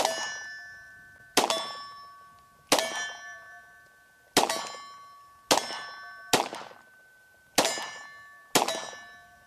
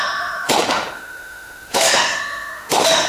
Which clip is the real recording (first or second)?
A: first